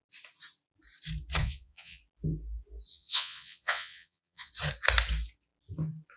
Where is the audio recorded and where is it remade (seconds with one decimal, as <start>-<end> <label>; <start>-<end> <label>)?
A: 0.0-1.4 recorded; 1.4-2.0 remade; 2.0-2.9 recorded; 2.9-4.5 remade; 4.5-6.2 recorded

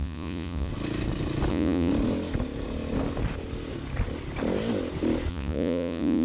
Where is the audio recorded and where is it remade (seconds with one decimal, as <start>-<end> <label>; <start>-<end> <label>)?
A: 0.0-0.7 remade; 0.7-1.5 recorded; 1.5-1.9 remade; 1.9-5.3 recorded; 5.3-6.2 remade

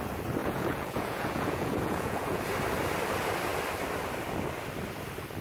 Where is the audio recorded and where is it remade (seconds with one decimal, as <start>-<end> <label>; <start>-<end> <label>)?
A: 0.0-0.4 recorded; 0.4-2.4 remade; 2.4-5.4 recorded

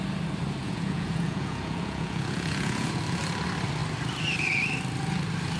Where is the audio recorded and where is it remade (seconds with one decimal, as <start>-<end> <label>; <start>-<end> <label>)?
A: 0.0-0.6 recorded; 0.6-3.0 remade; 3.0-5.6 recorded

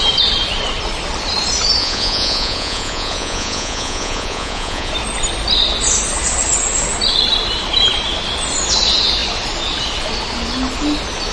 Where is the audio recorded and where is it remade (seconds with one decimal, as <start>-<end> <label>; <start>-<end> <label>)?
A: 0.0-1.8 recorded; 1.8-4.9 remade; 4.9-11.3 recorded

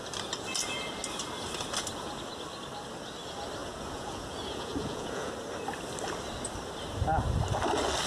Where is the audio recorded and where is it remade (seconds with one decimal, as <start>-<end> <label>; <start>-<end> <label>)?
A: 0.0-3.6 recorded; 3.6-5.3 remade; 5.3-8.1 recorded